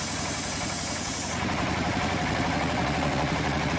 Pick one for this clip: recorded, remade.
remade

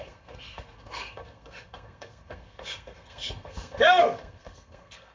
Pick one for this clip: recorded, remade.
remade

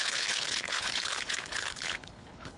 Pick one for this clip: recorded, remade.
remade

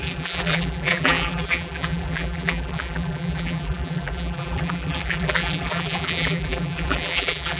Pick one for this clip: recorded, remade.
remade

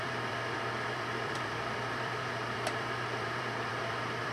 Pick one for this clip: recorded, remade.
remade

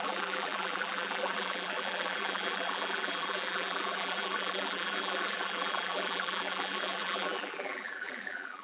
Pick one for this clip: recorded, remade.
remade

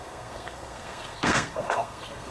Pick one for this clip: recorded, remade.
remade